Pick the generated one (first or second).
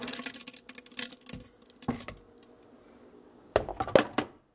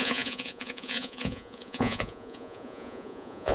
second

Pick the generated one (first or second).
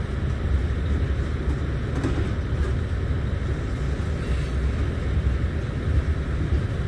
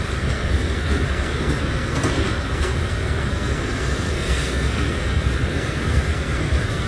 second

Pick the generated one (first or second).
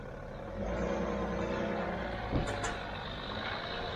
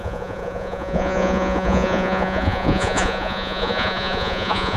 second